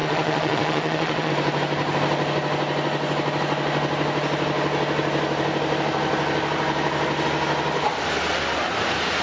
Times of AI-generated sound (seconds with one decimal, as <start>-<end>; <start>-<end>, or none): 0.0-1.3